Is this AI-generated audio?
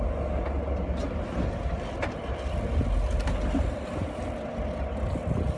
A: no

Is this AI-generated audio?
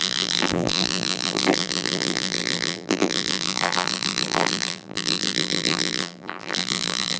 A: yes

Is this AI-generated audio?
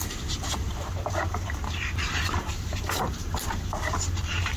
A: yes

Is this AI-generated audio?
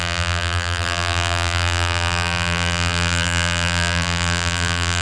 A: yes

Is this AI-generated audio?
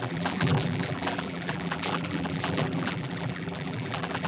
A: yes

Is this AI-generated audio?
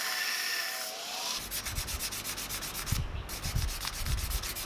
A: no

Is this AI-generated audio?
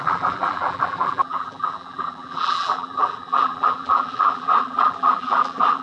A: yes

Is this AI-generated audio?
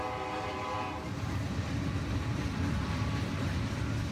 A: no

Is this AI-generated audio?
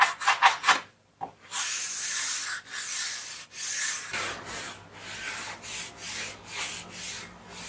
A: no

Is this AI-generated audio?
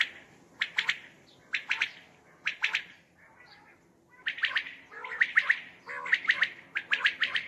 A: no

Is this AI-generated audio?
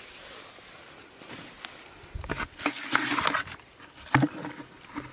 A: no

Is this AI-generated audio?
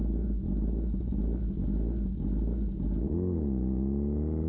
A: no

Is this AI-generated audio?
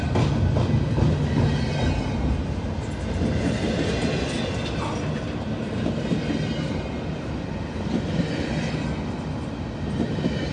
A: no